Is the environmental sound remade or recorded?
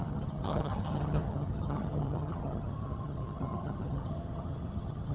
remade